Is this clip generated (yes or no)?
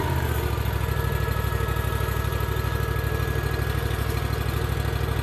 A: no